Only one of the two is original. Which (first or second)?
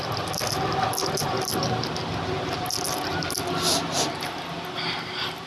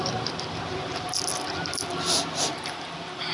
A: first